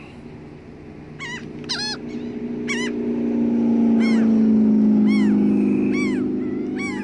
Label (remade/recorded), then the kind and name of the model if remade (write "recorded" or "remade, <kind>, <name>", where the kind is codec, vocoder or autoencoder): recorded